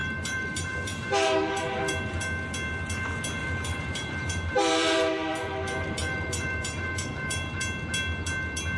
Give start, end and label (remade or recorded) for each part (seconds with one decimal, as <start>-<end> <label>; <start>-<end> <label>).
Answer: 0.0-1.9 remade; 1.9-3.4 recorded; 3.4-7.6 remade; 7.6-8.8 recorded